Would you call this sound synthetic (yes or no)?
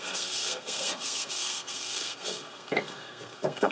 yes